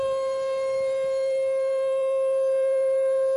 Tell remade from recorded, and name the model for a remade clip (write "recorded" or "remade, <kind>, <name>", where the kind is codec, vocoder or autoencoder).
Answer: remade, vocoder, BigVGAN v2